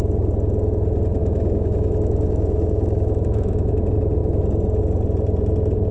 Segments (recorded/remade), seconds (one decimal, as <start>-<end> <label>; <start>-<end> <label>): 0.0-1.2 recorded; 1.2-3.7 remade; 3.7-5.9 recorded